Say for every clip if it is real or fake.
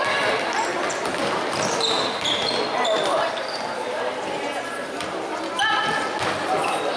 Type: real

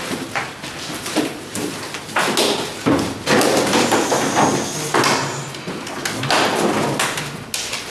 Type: real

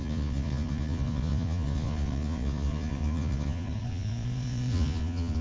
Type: fake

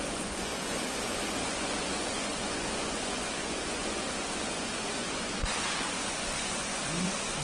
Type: fake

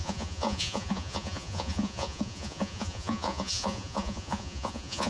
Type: fake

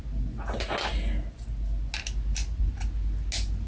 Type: real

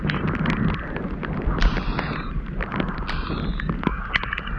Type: real